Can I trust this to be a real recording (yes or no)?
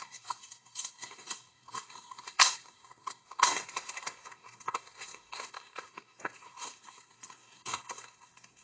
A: no